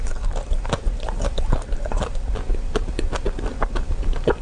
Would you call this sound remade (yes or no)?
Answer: yes